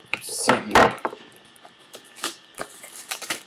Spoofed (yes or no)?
yes